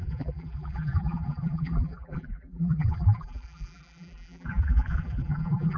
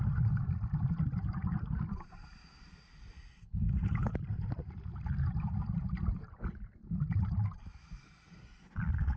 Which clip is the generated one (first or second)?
first